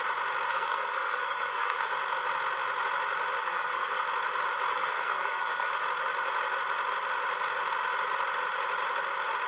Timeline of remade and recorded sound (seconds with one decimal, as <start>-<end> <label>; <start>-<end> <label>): 0.0-0.5 recorded; 0.5-1.9 remade; 1.9-3.4 recorded; 3.4-4.0 remade; 4.0-4.7 recorded; 4.7-5.7 remade; 5.7-9.5 recorded